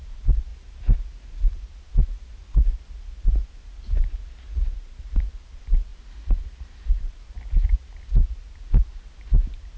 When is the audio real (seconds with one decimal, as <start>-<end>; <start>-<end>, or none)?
0.0-9.8